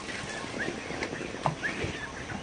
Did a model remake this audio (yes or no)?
no